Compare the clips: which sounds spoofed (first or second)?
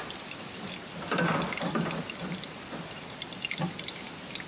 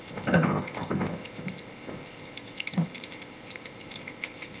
second